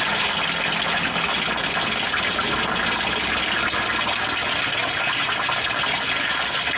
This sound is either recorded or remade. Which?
recorded